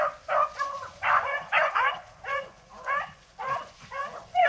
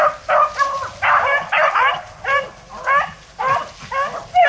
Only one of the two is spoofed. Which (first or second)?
first